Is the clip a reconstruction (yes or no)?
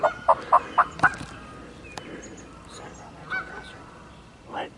no